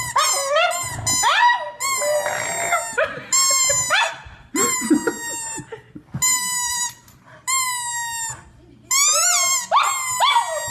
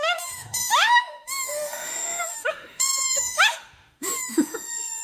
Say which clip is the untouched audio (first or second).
first